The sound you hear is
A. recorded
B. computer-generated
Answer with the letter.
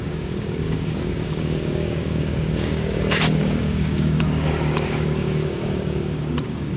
B